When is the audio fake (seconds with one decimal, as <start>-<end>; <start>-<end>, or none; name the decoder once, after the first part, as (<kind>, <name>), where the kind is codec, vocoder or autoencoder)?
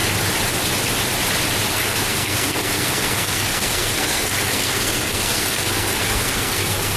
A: 1.7-7.0 (codec, SNAC)